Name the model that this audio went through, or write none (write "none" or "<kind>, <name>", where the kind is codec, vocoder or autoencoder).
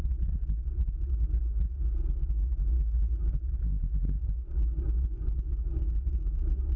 none